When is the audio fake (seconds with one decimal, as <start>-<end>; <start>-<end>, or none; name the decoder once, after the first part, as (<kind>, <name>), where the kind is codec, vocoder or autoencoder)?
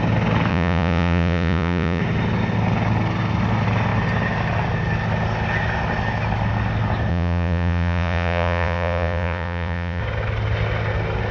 0.5-2.0 (vocoder, Vocos); 7.1-10.0